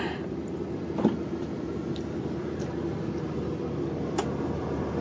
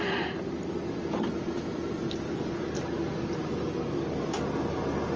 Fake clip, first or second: first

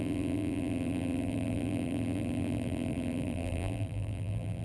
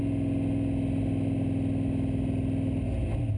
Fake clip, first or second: first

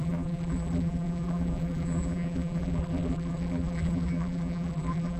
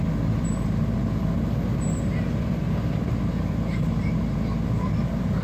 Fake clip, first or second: first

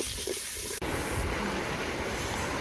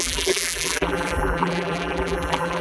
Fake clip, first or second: second